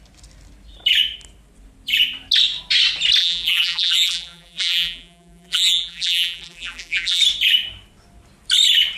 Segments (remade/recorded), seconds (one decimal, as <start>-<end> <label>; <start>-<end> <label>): 0.0-3.2 recorded; 3.2-7.2 remade; 7.2-9.0 recorded